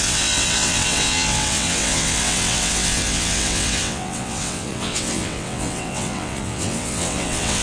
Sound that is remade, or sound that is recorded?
remade